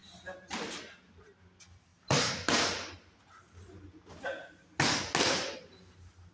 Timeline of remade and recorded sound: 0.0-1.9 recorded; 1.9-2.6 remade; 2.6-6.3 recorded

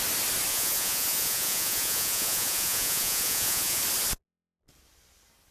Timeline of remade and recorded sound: 0.0-0.5 recorded; 0.5-3.8 remade; 3.8-5.5 recorded

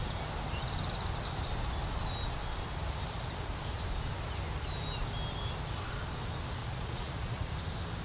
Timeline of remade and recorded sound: 0.0-6.6 recorded; 6.6-7.5 remade; 7.5-8.0 recorded

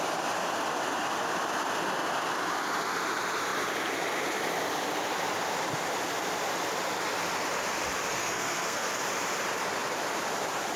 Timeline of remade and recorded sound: 0.0-8.1 recorded; 8.1-8.9 remade; 8.9-10.8 recorded

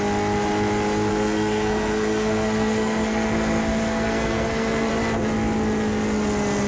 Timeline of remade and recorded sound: 0.0-1.1 recorded; 1.1-4.9 remade; 4.9-6.7 recorded